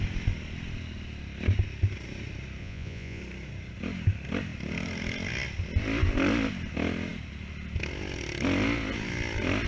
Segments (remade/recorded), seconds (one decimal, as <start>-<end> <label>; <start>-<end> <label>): 0.0-2.6 recorded; 2.6-3.2 remade; 3.2-9.7 recorded

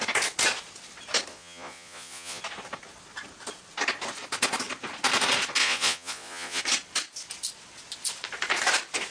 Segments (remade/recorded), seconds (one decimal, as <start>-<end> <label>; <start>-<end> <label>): 0.0-1.3 recorded; 1.3-2.4 remade; 2.4-5.6 recorded; 5.6-6.6 remade; 6.6-9.1 recorded